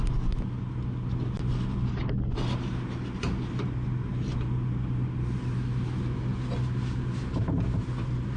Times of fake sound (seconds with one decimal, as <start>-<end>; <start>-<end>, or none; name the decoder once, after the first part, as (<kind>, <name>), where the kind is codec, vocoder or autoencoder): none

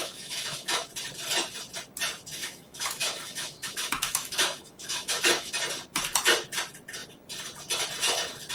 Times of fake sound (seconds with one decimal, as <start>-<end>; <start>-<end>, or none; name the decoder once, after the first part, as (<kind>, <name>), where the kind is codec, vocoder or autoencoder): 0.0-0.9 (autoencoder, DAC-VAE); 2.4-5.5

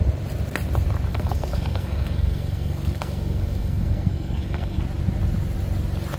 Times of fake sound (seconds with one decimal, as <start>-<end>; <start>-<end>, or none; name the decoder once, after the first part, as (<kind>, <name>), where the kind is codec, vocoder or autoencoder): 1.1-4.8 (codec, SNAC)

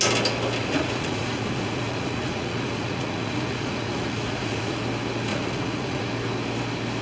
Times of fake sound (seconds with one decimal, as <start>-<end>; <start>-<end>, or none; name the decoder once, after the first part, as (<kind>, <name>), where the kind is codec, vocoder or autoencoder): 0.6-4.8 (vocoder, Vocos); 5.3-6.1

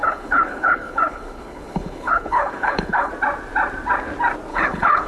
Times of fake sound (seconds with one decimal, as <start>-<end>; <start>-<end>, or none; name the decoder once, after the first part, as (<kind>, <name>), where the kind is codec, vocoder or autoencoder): 0.0-3.1 (codec, HILCodec); 4.5-5.1

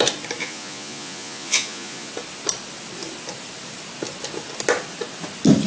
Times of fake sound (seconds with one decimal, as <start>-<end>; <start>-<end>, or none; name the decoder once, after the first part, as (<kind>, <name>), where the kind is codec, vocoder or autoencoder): 0.4-2.1 (vocoder, Vocos)

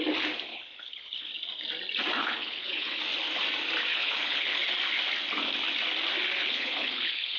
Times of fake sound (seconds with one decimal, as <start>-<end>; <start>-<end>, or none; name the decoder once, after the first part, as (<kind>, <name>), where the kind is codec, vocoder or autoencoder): 0.5-1.3 (codec, HILCodec); 2.2-3.0; 3.9-4.6; 6.4-7.4

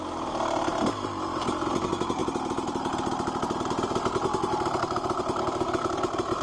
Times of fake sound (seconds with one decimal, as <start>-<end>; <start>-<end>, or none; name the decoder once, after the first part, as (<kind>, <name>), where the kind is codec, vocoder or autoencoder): none